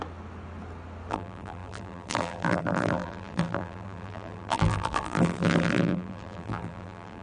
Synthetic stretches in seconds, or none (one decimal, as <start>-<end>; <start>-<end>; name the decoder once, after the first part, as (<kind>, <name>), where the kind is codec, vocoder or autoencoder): 1.1-7.2 (vocoder, BigVGAN v2)